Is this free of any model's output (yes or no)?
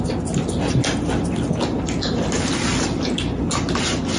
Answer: yes